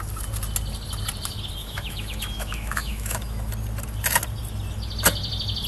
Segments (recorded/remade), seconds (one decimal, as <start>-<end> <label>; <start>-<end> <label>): 0.0-1.6 recorded; 1.6-3.5 remade; 3.5-5.7 recorded

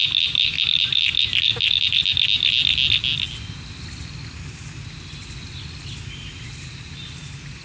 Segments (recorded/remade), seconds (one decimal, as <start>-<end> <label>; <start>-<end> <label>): 0.0-7.6 recorded

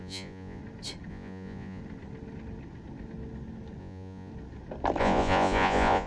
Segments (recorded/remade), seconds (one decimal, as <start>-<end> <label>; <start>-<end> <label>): 0.0-0.6 remade; 0.6-1.1 recorded; 1.1-1.8 remade; 1.8-3.8 recorded; 3.8-4.3 remade; 4.3-5.0 recorded; 5.0-6.1 remade

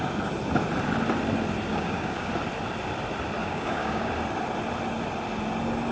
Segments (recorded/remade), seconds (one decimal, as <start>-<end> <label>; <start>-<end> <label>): 0.0-1.7 recorded; 1.7-2.3 remade; 2.3-3.4 recorded; 3.4-4.1 remade; 4.1-5.9 recorded

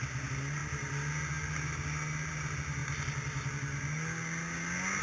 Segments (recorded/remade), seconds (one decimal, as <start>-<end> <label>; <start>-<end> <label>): 0.0-5.0 recorded

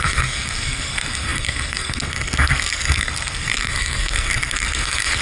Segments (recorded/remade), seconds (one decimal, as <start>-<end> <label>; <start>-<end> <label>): 0.0-5.2 remade

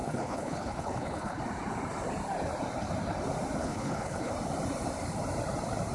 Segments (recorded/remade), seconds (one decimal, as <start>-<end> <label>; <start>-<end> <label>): 0.0-1.4 remade; 1.4-3.6 recorded; 3.6-4.3 remade; 4.3-5.9 recorded